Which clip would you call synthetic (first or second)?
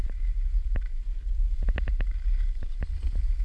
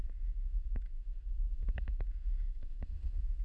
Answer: second